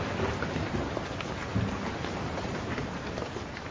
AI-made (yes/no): no